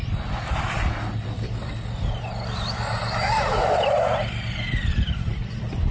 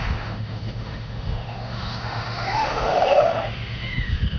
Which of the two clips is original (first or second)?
first